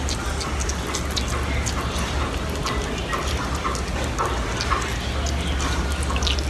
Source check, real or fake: real